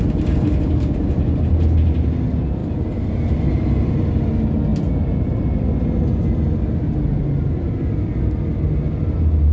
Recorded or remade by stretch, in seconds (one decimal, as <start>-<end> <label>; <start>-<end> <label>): 0.0-2.6 recorded; 2.6-3.5 remade; 3.5-9.5 recorded